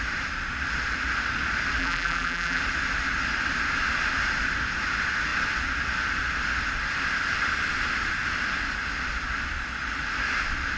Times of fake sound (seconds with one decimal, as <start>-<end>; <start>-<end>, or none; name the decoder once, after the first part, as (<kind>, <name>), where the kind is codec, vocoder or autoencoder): 1.8-2.6 (vocoder, BigVGAN v2)

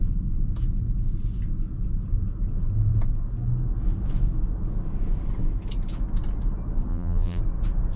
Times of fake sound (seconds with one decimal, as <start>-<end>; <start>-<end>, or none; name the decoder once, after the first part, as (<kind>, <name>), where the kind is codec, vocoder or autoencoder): 6.9-7.4 (vocoder, BigVGAN v2)